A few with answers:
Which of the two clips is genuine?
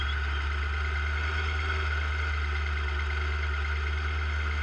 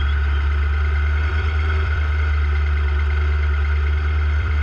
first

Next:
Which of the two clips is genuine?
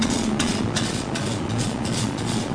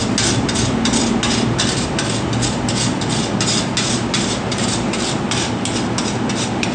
second